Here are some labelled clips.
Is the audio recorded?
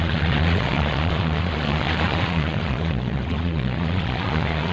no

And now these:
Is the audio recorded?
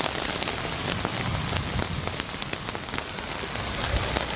yes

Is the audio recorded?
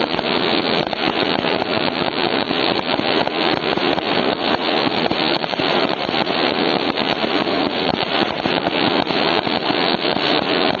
no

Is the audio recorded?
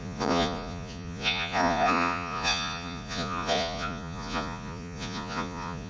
no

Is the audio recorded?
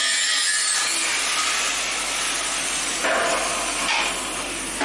yes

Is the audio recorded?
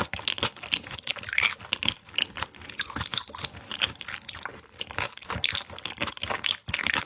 yes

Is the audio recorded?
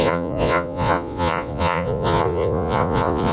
no